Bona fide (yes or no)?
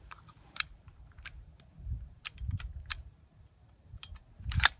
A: no